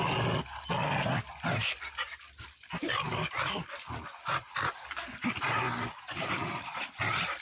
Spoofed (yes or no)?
no